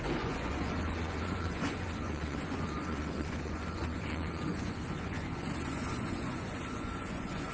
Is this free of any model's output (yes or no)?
no